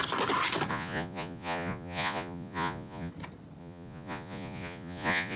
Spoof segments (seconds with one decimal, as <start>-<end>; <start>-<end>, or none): 0.7-3.1; 3.6-5.4